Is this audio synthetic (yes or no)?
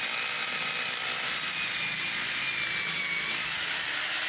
no